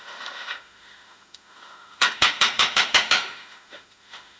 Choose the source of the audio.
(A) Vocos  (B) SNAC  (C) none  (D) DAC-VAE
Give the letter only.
D